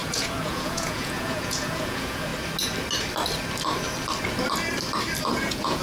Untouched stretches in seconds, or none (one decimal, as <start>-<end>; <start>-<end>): 2.3-5.3